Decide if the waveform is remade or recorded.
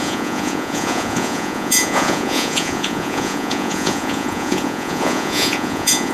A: remade